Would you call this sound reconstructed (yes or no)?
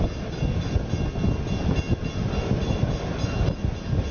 no